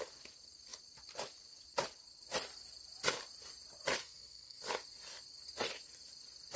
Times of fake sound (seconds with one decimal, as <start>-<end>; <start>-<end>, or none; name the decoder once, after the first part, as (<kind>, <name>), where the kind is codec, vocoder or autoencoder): 4.0-4.6 (codec, SNAC)